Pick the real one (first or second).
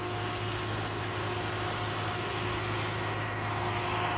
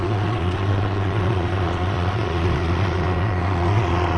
first